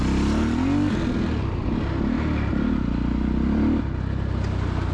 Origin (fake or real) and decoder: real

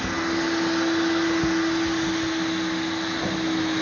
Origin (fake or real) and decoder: real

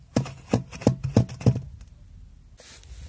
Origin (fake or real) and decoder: real